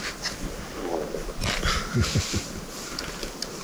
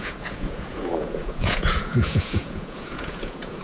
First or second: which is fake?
second